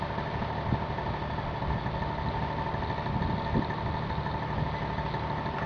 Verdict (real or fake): real